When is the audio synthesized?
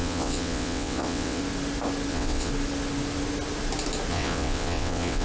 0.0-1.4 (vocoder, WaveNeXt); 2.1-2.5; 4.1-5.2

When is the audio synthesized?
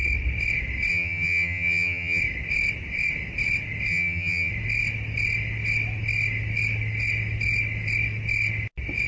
0.9-2.2 (vocoder, HiFi-GAN); 3.9-4.5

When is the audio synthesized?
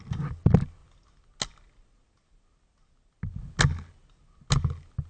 none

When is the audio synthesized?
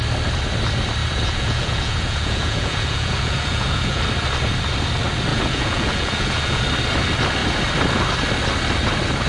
1.0-4.0 (vocoder, Vocos); 5.3-6.6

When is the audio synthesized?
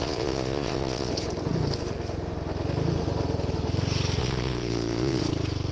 0.0-1.1 (vocoder, Vocos); 4.2-5.2